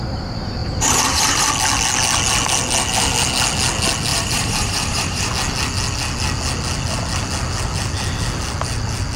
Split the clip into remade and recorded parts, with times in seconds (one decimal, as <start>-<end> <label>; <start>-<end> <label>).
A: 0.0-0.6 recorded; 0.6-1.5 remade; 1.5-4.1 recorded; 4.1-5.3 remade; 5.3-9.2 recorded